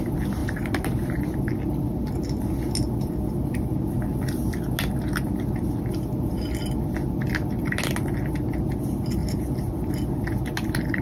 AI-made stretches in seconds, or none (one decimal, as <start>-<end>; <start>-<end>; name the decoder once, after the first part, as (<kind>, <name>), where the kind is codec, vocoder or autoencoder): 0.4-1.2 (vocoder, BigVGAN v2); 9.2-9.9